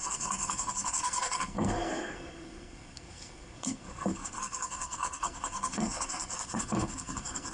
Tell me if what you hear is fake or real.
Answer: fake